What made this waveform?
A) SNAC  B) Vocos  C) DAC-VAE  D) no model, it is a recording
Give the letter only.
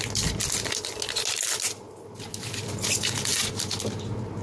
D